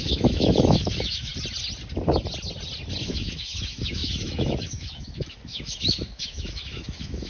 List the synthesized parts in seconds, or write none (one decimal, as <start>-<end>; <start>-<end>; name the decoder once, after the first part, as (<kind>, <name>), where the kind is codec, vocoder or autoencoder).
0.0-1.3 (autoencoder, DAC-VAE); 3.0-7.3